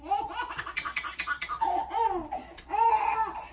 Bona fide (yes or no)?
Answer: yes